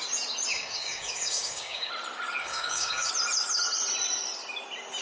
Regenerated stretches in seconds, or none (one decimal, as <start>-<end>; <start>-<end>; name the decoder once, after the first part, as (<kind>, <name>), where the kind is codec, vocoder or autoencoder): 0.5-1.9 (codec, DAC); 2.4-3.1